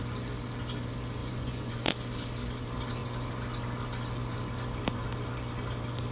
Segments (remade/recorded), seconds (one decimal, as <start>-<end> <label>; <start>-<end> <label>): 0.0-1.2 recorded; 1.2-1.9 remade; 1.9-6.1 recorded